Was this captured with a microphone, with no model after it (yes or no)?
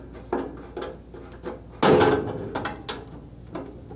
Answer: yes